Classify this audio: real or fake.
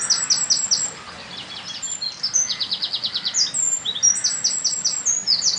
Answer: real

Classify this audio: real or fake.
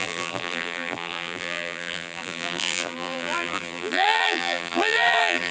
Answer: fake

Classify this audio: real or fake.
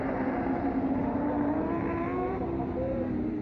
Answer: fake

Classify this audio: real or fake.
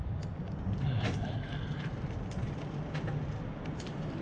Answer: real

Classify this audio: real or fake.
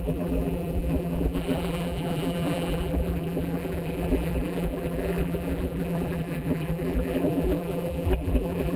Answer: fake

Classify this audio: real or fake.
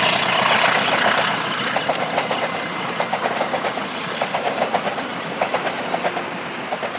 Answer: real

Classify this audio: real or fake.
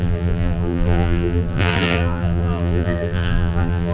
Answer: fake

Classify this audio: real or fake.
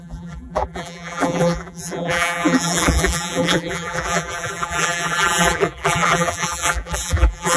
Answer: fake